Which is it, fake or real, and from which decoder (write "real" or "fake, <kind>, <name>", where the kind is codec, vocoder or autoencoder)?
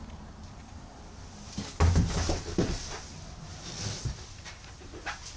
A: real